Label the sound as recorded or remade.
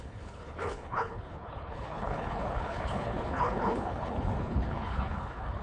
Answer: remade